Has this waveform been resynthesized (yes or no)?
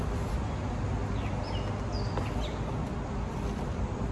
no